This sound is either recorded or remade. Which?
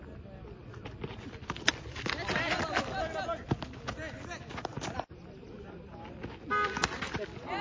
recorded